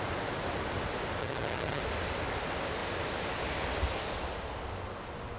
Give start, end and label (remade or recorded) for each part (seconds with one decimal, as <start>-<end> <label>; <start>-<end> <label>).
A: 0.0-1.2 recorded; 1.2-1.8 remade; 1.8-5.4 recorded